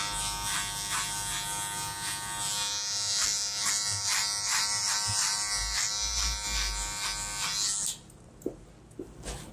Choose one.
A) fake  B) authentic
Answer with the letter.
B